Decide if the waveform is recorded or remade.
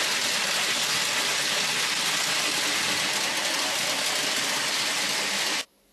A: recorded